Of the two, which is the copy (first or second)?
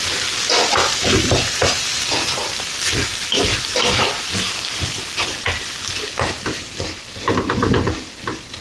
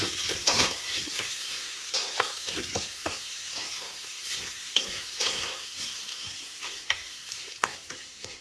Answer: second